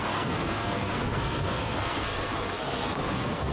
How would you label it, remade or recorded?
remade